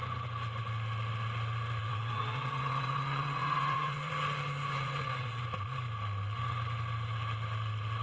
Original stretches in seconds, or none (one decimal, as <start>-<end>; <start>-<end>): 0.0-1.8; 4.1-4.7; 5.4-8.0